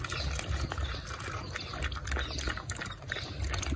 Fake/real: real